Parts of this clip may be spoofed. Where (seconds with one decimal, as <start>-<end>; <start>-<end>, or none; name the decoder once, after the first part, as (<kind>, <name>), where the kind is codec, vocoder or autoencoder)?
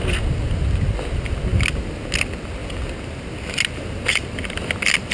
none